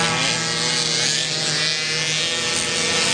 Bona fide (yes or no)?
yes